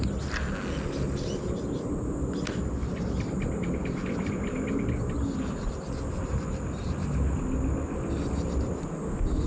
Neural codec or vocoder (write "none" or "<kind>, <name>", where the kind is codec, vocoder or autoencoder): none